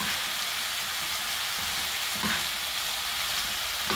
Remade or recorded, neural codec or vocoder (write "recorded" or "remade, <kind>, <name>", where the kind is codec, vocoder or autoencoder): recorded